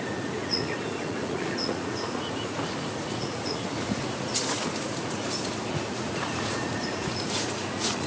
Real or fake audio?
fake